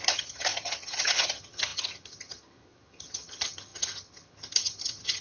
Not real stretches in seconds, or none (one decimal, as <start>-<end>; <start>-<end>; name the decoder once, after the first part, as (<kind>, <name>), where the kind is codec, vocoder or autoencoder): 0.0-5.2 (vocoder, HiFi-GAN)